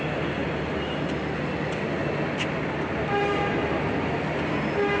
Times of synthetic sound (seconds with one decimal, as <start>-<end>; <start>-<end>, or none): none